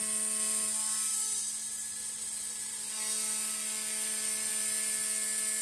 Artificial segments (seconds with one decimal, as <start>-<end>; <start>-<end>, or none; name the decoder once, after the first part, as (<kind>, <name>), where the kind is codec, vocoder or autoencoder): none